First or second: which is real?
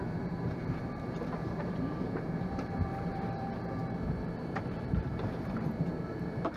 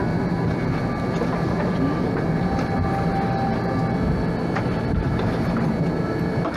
second